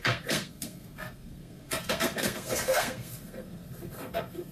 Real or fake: fake